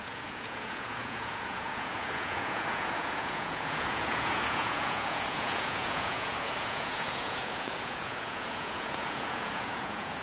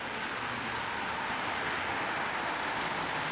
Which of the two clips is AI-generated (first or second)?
first